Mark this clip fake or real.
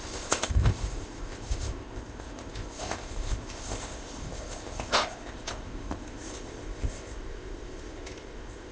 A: fake